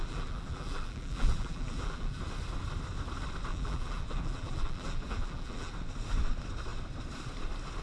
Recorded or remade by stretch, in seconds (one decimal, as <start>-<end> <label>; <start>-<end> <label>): 0.0-2.2 remade; 2.2-3.5 recorded; 3.5-5.7 remade; 5.7-7.8 recorded